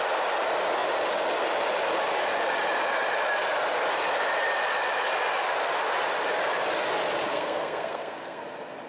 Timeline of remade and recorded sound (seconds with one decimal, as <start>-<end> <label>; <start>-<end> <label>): 0.0-7.3 recorded; 7.3-8.4 remade; 8.4-8.9 recorded

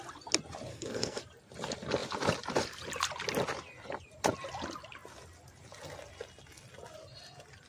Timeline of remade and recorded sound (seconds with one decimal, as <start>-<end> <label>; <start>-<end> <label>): 0.0-0.7 recorded; 0.7-1.2 remade; 1.2-7.7 recorded

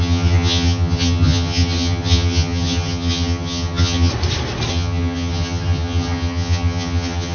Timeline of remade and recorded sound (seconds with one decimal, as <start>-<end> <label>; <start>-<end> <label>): 0.0-4.1 remade; 4.1-4.7 recorded; 4.7-7.3 remade

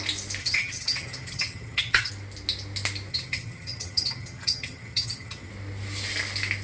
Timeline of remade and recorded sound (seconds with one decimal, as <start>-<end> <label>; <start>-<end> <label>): 0.0-0.4 recorded; 0.4-2.1 remade; 2.1-3.1 recorded; 3.1-5.5 remade; 5.5-6.6 recorded

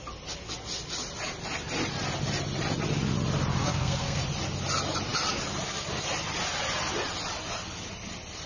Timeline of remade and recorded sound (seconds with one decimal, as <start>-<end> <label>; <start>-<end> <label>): 0.0-3.6 recorded; 3.6-4.2 remade; 4.2-8.5 recorded

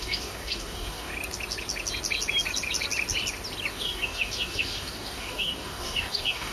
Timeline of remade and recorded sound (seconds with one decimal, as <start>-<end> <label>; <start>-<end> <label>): 0.0-1.1 remade; 1.1-3.7 recorded; 3.7-6.5 remade